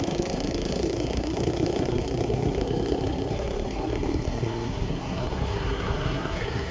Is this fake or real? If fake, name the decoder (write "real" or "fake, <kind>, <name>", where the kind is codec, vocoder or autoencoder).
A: fake, codec, SNAC